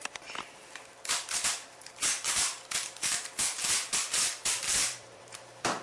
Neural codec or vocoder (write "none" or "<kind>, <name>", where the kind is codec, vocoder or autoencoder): vocoder, BigVGAN v2